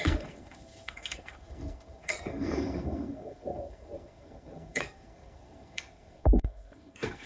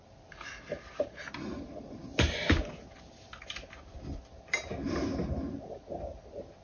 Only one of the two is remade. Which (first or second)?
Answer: first